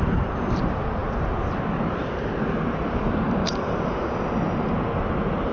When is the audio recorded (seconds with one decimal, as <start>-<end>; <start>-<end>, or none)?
0.0-5.5